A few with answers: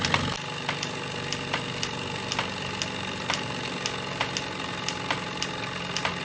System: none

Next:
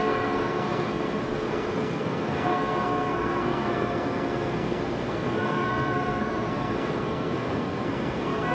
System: codec, SNAC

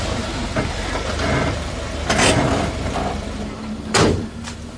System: vocoder, BigVGAN v2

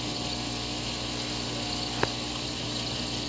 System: none